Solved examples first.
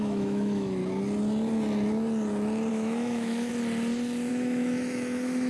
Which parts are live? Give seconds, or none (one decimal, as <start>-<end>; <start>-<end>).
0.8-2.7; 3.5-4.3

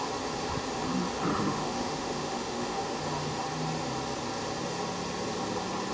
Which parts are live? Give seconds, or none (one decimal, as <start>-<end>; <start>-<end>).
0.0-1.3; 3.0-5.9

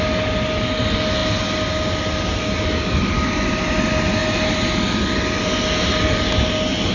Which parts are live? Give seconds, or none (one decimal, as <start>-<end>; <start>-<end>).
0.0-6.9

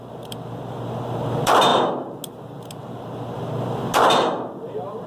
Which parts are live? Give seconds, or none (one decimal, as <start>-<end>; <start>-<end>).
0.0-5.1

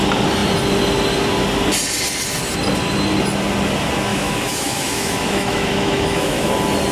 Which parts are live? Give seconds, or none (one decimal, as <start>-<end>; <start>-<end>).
0.0-4.1; 6.5-6.9

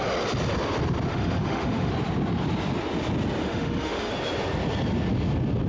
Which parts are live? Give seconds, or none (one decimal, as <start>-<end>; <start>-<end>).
0.0-1.1; 1.9-3.4; 4.1-5.7

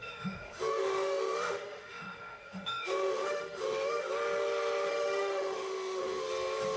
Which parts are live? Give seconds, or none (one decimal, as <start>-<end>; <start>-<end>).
4.1-4.9; 6.3-6.8